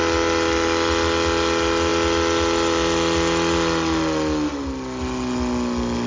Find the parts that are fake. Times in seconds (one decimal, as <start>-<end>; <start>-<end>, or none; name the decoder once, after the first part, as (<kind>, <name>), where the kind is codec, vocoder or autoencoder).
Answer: none